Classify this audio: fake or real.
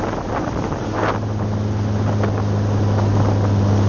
real